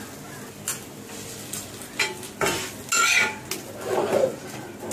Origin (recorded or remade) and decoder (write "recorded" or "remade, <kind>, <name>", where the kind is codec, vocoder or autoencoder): recorded